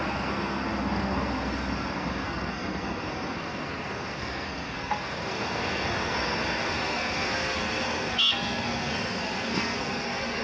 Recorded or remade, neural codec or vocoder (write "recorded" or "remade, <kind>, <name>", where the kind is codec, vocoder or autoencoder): remade, codec, SNAC